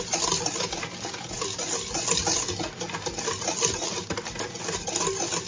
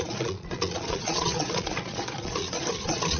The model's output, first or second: second